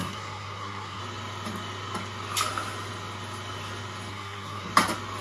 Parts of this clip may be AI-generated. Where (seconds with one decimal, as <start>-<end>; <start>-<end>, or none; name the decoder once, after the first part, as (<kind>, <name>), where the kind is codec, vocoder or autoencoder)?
0.0-1.0 (codec, SNAC); 4.1-4.7